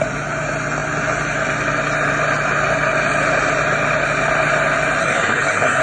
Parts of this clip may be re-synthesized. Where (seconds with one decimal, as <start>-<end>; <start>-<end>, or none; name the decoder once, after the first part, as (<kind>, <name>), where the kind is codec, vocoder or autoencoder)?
5.0-5.8 (codec, SNAC)